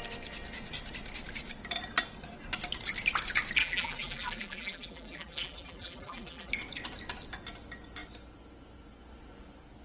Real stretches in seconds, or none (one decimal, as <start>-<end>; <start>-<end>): 0.0-3.6; 6.5-9.8